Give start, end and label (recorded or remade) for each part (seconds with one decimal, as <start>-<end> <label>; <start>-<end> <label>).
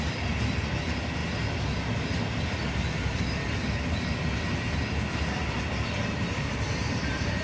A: 0.0-7.4 recorded